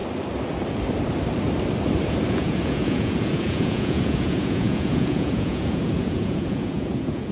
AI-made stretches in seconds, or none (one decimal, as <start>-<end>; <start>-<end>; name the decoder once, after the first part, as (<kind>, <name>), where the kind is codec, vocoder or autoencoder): 2.3-7.3 (vocoder, Vocos)